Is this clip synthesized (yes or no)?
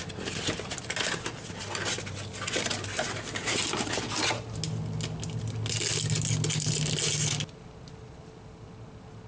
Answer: no